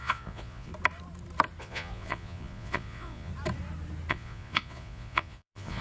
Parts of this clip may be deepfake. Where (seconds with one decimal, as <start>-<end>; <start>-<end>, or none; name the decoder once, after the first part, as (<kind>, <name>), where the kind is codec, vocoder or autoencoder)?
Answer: 0.0-0.7 (vocoder, Vocos); 1.6-3.3; 4.1-5.8